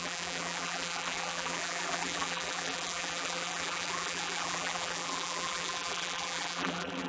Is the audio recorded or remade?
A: remade